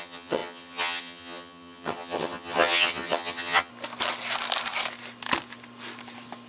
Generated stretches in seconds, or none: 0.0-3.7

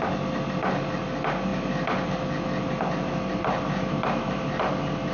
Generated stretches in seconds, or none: none